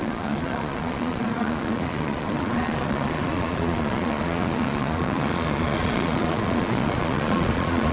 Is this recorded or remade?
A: remade